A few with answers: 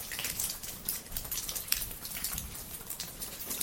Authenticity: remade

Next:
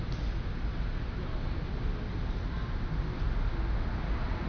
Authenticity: recorded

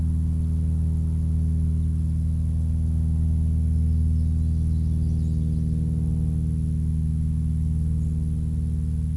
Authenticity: recorded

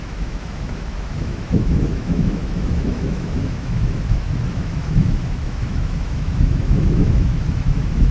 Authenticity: remade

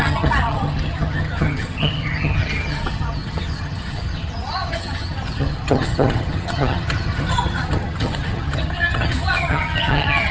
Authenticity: remade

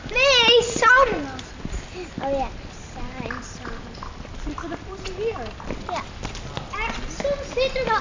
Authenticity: recorded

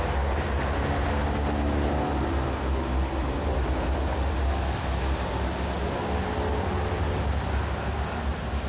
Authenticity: recorded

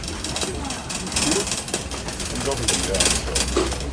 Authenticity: recorded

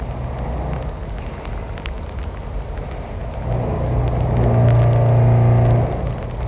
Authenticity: recorded